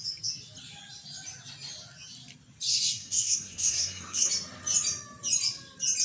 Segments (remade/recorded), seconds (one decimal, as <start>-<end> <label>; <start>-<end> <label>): 0.0-2.7 recorded; 2.7-4.3 remade; 4.3-6.0 recorded